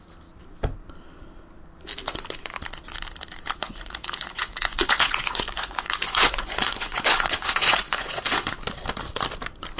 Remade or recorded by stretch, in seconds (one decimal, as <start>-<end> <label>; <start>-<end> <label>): 0.0-3.6 recorded; 3.6-8.6 remade; 8.6-9.8 recorded

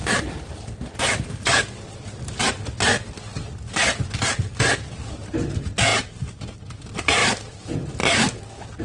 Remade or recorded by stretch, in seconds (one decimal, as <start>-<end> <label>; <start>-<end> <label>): 0.0-2.4 remade; 2.4-7.2 recorded; 7.2-8.2 remade; 8.2-8.8 recorded